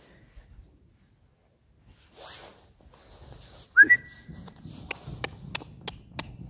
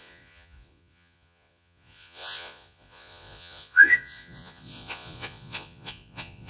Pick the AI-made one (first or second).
second